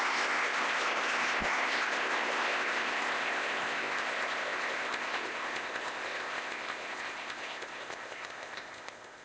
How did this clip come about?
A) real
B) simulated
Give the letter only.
B